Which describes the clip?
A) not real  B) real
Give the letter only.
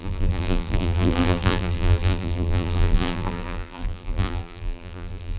A